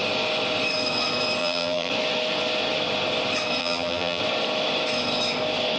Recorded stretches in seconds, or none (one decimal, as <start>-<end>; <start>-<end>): 0.0-1.4; 1.9-3.6; 4.2-5.8